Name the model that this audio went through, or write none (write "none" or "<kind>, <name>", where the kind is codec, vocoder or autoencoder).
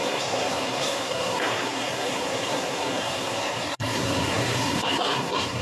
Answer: codec, SNAC